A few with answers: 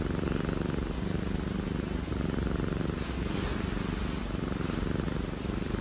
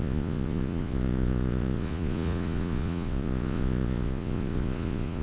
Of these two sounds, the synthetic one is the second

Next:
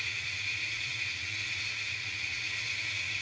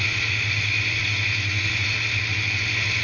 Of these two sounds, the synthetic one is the first